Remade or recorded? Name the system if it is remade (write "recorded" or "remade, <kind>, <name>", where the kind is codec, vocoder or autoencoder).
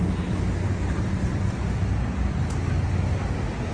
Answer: recorded